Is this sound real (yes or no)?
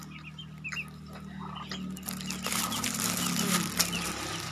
yes